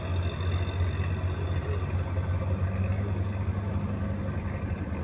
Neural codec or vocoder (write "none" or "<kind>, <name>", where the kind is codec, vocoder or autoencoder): none